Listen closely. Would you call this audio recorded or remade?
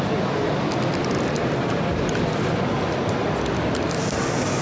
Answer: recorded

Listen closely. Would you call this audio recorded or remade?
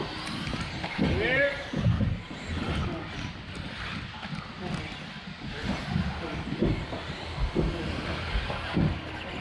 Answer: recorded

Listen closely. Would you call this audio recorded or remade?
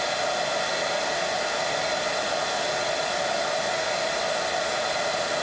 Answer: recorded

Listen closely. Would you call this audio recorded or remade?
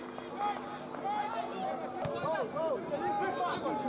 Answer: recorded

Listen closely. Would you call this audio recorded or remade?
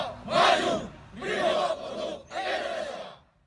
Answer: recorded